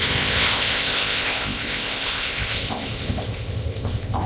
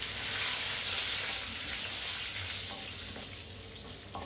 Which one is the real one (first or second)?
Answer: second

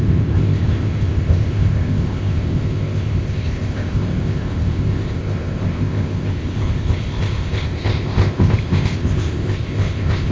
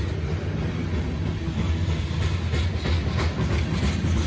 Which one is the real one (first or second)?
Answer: second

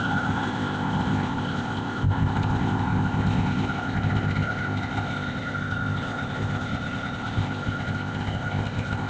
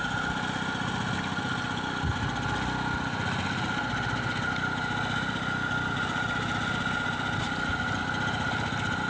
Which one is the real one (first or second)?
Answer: second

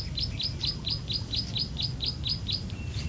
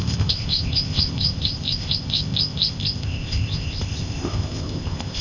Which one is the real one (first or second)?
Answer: first